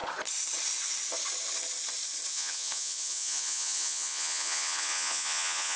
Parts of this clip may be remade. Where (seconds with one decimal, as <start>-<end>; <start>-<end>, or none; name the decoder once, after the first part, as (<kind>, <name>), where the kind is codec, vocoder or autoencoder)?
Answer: 2.3-5.8 (vocoder, Vocos)